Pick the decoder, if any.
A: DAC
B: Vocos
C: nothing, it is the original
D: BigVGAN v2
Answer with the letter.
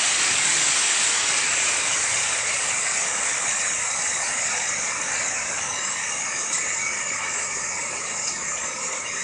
A